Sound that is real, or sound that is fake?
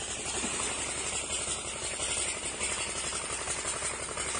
real